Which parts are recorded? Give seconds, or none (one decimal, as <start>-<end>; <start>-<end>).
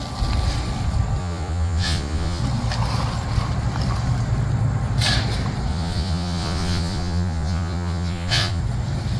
0.0-1.2; 2.4-5.7; 8.6-9.2